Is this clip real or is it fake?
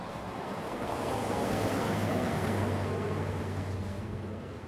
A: fake